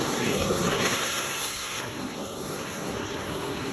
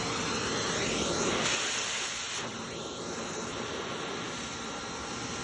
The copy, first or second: first